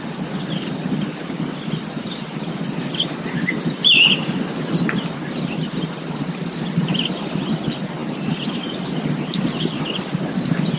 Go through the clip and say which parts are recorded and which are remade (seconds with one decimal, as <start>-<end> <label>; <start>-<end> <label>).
0.0-10.8 recorded